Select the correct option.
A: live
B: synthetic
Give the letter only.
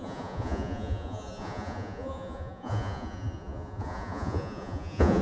B